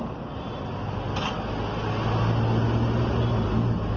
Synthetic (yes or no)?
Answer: no